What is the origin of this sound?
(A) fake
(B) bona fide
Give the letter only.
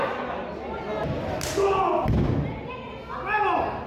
B